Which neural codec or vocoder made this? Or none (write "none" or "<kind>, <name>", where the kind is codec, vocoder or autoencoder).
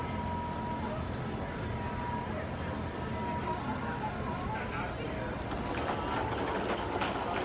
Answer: none